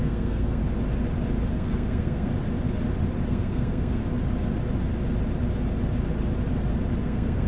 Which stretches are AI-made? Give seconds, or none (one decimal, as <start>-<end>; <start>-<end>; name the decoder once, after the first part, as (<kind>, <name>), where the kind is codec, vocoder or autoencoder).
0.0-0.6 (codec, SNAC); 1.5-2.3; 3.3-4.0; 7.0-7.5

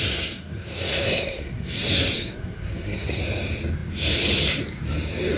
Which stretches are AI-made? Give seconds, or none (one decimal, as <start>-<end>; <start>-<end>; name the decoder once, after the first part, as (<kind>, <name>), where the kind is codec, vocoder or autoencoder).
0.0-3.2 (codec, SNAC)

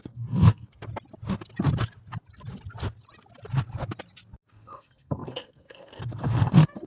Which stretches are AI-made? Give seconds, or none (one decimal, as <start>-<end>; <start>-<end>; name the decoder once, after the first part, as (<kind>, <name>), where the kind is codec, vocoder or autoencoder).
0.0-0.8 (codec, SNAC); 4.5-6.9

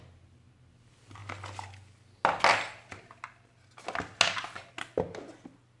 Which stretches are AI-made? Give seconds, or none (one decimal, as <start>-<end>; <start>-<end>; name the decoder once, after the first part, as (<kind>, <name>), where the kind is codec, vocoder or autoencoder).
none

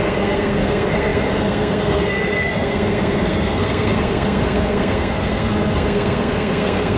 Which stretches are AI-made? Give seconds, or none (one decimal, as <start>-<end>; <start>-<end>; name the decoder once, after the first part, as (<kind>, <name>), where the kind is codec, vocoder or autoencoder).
0.0-7.0 (codec, SNAC)

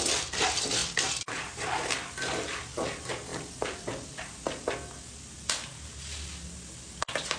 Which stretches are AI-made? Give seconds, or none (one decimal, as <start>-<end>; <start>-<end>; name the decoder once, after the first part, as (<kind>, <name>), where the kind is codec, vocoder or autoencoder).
none

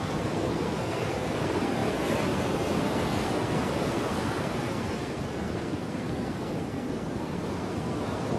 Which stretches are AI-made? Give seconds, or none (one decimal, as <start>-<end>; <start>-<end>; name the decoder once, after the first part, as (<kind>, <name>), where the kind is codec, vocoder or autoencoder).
0.0-8.4 (codec, SNAC)